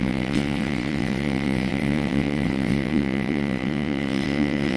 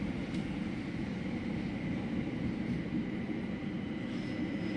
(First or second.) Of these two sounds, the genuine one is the second